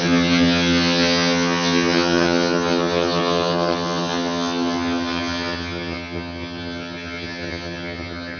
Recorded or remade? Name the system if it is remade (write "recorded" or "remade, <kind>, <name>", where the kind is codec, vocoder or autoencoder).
remade, vocoder, HiFi-GAN